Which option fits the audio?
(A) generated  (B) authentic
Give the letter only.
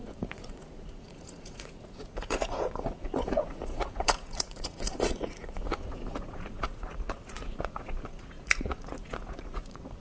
A